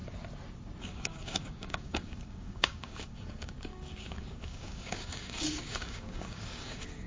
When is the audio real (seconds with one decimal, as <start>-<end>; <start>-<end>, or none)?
0.0-0.8